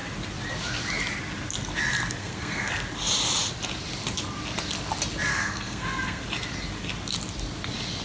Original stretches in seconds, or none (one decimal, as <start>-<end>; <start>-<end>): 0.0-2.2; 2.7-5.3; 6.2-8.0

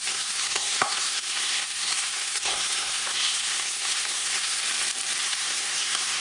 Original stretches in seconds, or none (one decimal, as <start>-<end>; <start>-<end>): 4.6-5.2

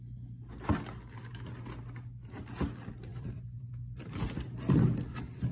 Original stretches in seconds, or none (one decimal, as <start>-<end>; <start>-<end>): 0.0-3.1

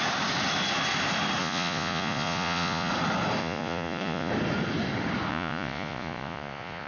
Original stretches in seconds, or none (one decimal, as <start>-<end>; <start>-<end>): 0.0-1.4; 2.9-3.4; 4.3-5.3

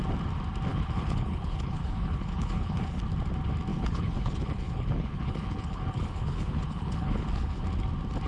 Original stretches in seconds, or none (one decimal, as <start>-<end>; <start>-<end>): 0.0-0.7; 3.0-3.7; 7.6-8.3

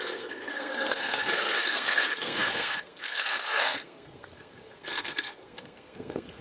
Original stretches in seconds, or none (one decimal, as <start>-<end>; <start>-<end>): none

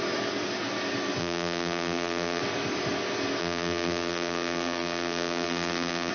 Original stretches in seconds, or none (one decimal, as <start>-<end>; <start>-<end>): 0.0-1.2; 2.4-3.4

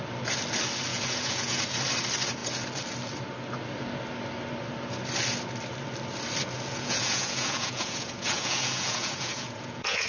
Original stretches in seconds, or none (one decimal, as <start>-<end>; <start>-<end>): 0.0-0.9; 1.8-6.7